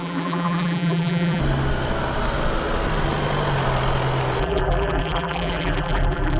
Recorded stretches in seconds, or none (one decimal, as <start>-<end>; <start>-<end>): 1.4-4.4